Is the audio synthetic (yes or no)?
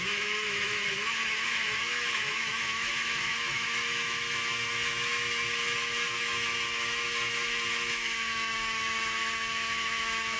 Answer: yes